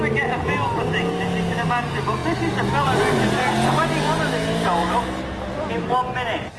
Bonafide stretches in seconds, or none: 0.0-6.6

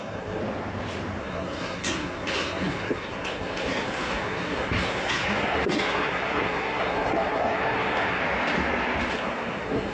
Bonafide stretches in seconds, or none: 0.4-1.2; 8.2-9.1

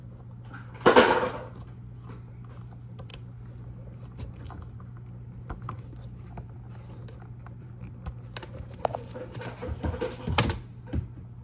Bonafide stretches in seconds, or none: 0.0-11.4

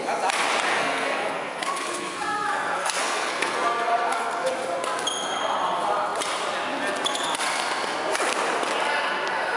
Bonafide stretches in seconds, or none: 0.0-0.7; 4.5-9.6

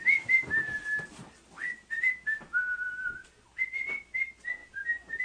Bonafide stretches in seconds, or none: 0.0-4.6

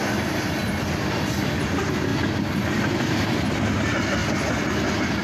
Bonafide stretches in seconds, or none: 0.0-5.2